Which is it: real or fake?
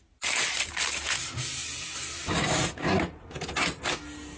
real